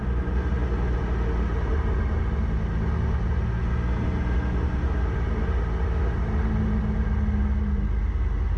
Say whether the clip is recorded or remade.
recorded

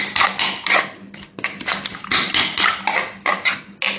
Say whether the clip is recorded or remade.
recorded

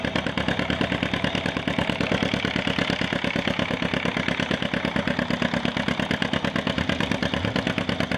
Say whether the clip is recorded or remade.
recorded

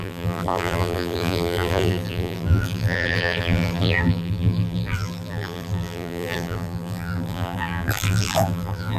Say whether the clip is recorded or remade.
remade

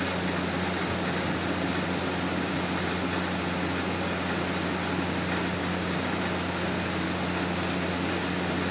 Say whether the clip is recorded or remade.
recorded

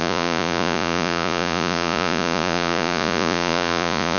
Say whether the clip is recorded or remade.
remade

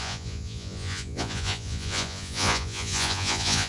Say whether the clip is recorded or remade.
remade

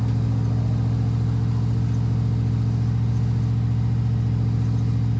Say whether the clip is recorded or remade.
recorded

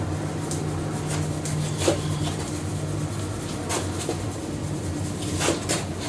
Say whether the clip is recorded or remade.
recorded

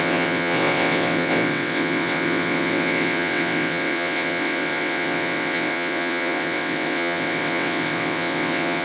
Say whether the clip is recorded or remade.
remade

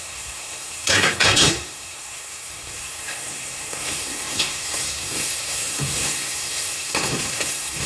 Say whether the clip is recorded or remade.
remade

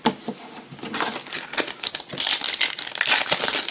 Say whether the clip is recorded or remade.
recorded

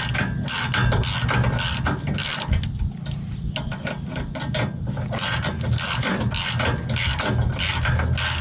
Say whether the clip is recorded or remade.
recorded